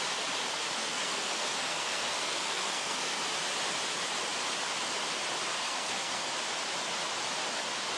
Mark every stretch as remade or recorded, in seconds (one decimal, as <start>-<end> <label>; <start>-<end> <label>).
0.0-0.8 recorded; 0.8-3.2 remade; 3.2-5.5 recorded; 5.5-6.3 remade; 6.3-8.0 recorded